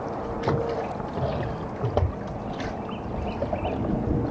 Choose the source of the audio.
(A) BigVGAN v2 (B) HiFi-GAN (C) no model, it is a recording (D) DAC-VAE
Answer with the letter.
C